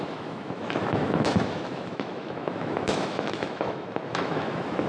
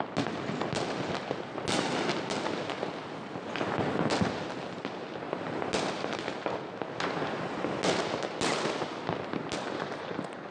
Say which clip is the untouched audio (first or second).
second